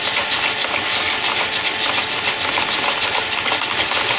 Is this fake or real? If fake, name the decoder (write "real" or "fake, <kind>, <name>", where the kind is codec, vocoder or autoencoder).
real